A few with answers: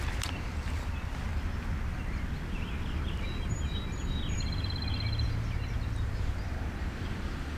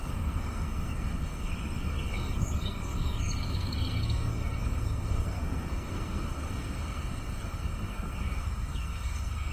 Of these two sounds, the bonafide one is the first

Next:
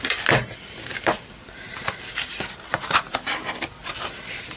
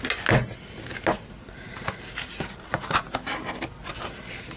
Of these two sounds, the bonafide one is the second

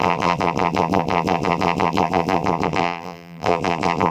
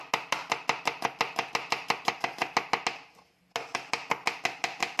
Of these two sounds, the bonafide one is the second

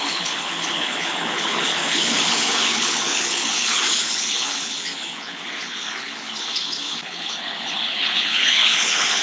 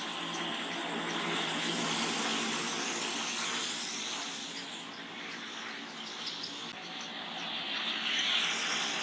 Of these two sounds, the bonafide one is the second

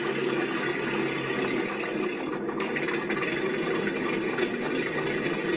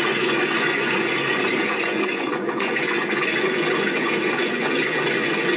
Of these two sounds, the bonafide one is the first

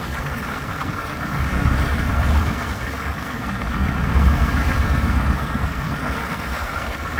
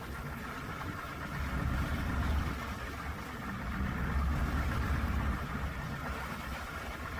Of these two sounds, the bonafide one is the second